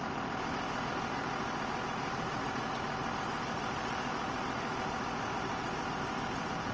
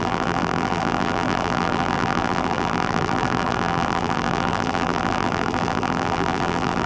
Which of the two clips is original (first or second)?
first